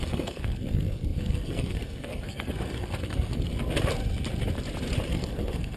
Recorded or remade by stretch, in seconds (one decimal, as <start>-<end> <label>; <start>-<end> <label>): 0.0-3.5 remade; 3.5-5.1 recorded; 5.1-5.8 remade